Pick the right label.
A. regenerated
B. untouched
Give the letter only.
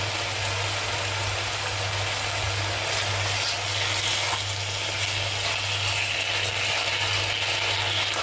B